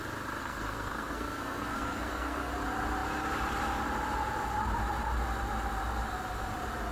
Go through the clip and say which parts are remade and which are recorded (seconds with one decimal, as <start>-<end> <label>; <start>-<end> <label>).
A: 0.0-0.4 recorded; 0.4-2.5 remade; 2.5-6.9 recorded